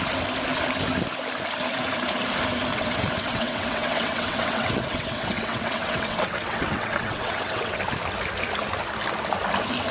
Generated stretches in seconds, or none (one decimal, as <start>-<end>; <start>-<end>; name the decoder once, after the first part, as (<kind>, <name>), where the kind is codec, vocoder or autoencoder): 2.7-7.8 (vocoder, WaveNeXt)